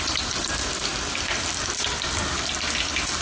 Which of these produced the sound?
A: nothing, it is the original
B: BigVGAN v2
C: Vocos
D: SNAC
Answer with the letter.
A